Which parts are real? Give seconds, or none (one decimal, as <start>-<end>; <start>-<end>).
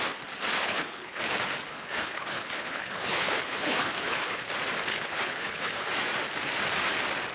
0.0-0.6; 1.2-1.7; 4.4-4.9; 5.9-7.3